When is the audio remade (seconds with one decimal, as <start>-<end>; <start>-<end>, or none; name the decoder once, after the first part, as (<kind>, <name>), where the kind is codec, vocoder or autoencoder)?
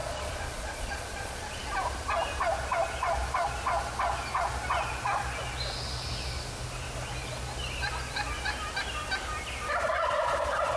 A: 0.0-1.6 (vocoder, Vocos)